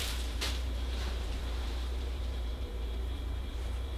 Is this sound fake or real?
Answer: fake